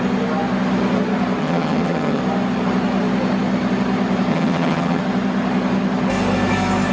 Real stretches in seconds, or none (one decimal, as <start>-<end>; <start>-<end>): 0.0-1.4; 2.2-4.3; 5.0-6.9